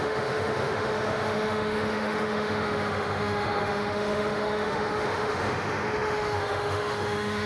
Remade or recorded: remade